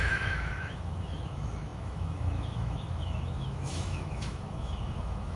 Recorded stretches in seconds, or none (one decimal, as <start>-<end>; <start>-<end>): none